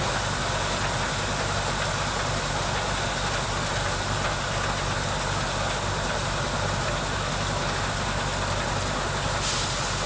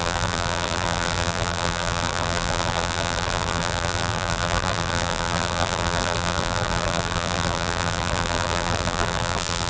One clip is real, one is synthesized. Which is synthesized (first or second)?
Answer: second